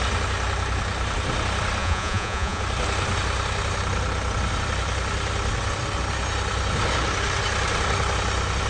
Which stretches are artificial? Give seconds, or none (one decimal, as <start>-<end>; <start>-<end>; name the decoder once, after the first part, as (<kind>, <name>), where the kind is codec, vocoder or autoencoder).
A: 1.8-2.6 (vocoder, Vocos)